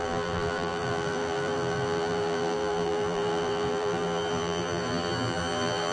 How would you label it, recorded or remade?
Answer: remade